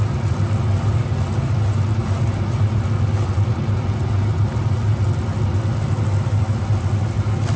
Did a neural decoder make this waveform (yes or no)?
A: no